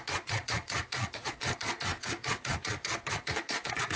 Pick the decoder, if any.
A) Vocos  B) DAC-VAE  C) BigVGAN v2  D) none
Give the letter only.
A